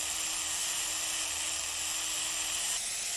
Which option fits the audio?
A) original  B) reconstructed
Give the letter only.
A